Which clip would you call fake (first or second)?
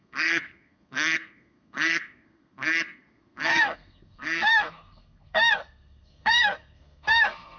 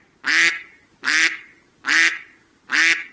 first